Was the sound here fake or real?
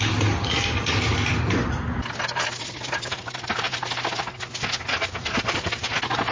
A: real